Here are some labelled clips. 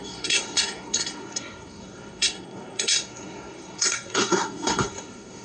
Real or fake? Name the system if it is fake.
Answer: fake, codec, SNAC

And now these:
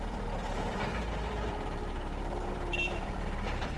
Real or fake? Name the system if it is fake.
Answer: fake, vocoder, BigVGAN v2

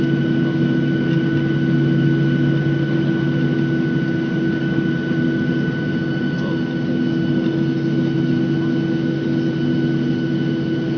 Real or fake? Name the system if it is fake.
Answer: real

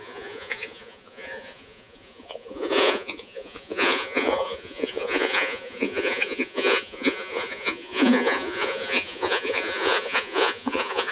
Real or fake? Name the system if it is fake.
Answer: fake, vocoder, Vocos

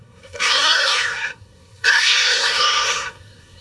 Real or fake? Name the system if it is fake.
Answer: fake, codec, SNAC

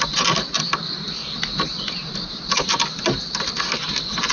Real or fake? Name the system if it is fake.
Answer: real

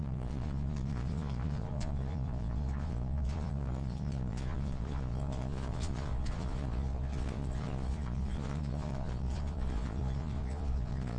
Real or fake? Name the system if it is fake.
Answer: fake, vocoder, Vocos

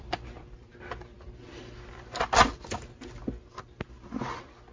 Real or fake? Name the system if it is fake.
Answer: real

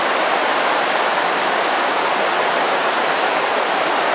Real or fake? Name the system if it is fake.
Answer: real